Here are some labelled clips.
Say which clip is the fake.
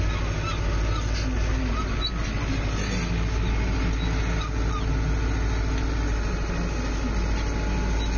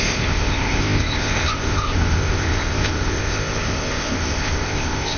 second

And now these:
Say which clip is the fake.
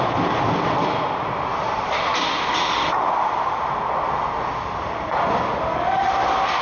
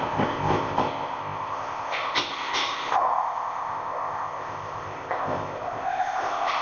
second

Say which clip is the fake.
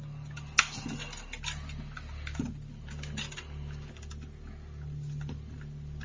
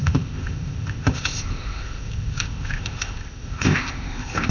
second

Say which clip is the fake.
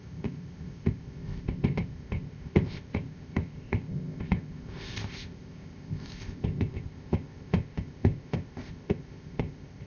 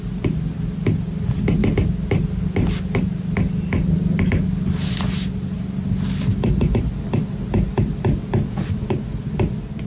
first